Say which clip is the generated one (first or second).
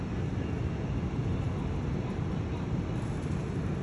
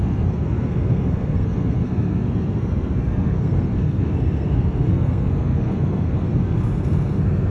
second